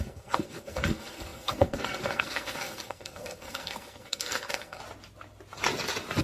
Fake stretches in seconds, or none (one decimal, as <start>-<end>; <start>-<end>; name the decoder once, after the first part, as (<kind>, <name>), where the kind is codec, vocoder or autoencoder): 0.0-4.8 (codec, SNAC)